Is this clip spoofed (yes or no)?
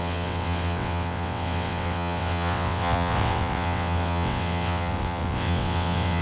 yes